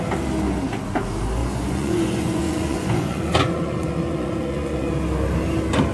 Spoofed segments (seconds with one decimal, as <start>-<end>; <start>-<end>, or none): 1.4-4.9